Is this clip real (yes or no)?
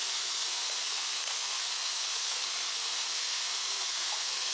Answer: no